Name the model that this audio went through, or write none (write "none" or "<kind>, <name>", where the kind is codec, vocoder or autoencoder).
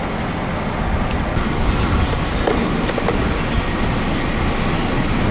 none